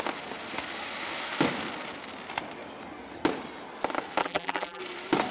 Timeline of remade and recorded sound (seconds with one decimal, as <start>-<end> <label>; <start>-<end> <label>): 0.0-4.2 recorded; 4.2-4.8 remade; 4.8-5.3 recorded